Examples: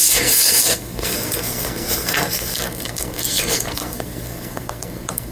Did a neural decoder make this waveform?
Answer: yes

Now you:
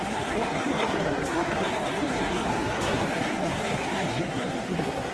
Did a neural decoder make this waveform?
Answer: yes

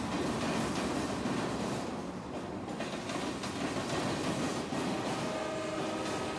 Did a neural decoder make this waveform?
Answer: no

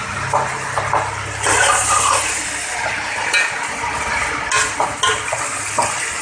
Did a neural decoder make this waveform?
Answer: no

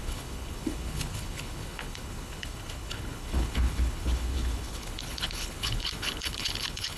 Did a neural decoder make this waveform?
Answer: yes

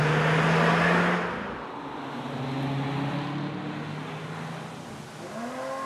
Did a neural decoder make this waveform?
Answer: no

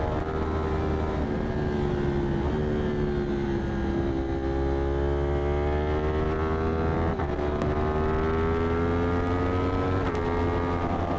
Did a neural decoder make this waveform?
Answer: no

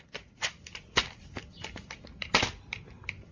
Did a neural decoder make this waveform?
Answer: no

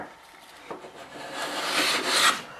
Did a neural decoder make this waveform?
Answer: no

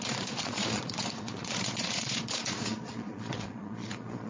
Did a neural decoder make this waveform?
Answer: yes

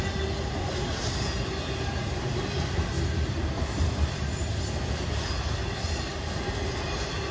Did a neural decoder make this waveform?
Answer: no